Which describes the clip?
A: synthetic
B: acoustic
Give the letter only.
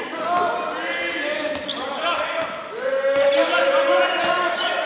B